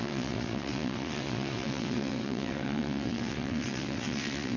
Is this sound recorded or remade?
remade